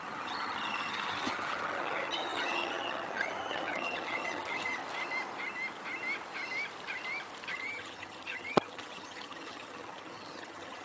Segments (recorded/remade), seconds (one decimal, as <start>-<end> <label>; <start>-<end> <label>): 0.0-4.8 remade; 4.8-7.5 recorded; 7.5-10.8 remade